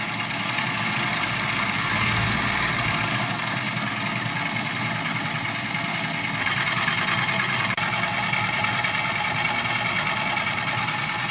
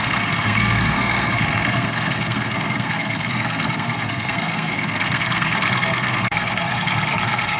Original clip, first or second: first